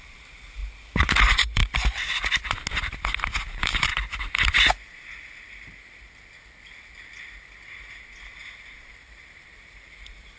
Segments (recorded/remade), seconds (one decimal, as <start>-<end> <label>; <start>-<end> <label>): 0.0-0.6 remade; 0.6-1.2 recorded; 1.2-1.6 remade; 1.6-3.4 recorded; 3.4-3.9 remade; 3.9-9.0 recorded; 9.0-10.4 remade